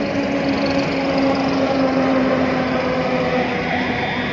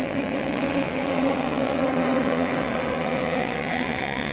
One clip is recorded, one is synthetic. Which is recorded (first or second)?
first